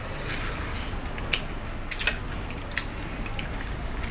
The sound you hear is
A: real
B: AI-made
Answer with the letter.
A